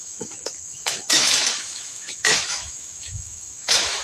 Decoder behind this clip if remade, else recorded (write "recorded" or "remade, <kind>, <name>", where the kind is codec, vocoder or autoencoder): remade, autoencoder, DAC-VAE